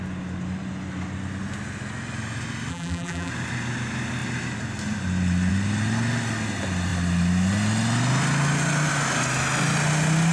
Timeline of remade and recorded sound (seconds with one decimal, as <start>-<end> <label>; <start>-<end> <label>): 0.0-2.7 recorded; 2.7-3.3 remade; 3.3-10.3 recorded